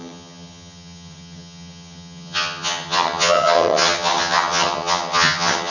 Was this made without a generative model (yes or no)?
no